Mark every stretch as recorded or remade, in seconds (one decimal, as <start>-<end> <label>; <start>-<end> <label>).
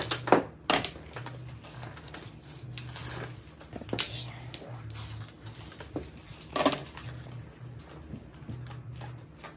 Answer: 0.0-9.6 recorded